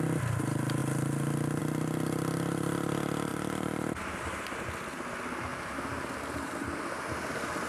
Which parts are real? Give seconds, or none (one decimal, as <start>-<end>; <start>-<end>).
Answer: 0.0-3.3; 4.6-5.5; 6.7-7.7